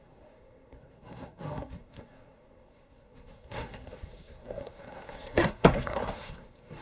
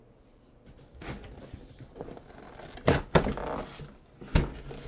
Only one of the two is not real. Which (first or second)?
first